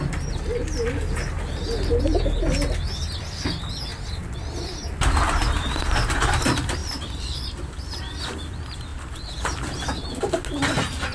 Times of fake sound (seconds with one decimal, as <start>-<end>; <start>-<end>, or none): 6.8-8.2; 8.9-10.2